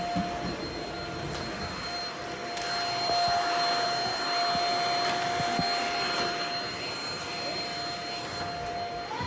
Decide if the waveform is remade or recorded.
recorded